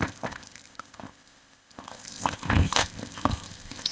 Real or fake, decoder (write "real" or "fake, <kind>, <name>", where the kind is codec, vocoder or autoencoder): fake, codec, ZipCodec